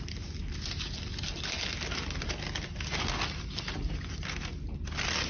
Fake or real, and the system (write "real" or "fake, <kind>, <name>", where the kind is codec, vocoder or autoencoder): real